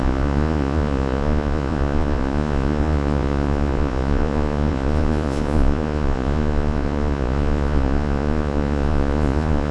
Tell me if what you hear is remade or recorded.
remade